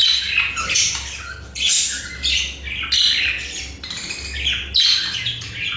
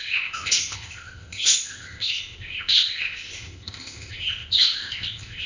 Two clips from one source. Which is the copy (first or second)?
second